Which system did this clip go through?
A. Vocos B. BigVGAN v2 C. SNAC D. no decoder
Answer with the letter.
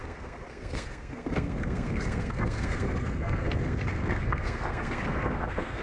C